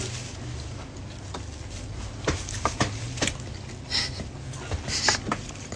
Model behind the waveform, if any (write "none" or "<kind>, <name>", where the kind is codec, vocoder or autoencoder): none